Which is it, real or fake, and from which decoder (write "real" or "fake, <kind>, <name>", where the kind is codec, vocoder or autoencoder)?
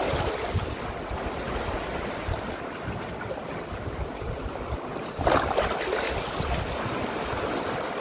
real